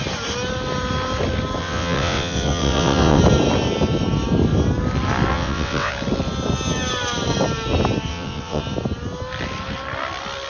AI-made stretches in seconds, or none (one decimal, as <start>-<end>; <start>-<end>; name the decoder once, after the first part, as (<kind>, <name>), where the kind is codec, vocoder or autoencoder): 1.6-3.2 (vocoder, WaveNeXt); 5.3-5.9; 8.1-8.6